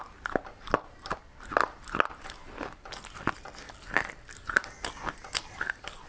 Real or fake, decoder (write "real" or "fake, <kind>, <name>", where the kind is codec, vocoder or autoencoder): real